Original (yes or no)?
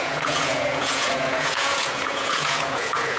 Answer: no